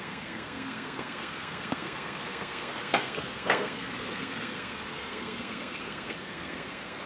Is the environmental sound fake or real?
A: fake